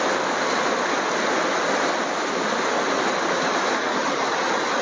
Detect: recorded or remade recorded